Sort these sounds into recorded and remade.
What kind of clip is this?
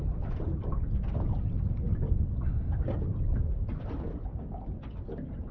recorded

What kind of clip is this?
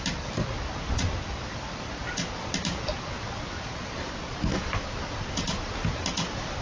recorded